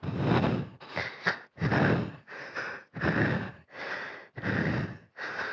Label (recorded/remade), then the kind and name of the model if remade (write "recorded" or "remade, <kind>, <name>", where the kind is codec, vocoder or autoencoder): recorded